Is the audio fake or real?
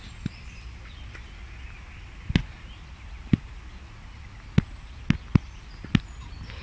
real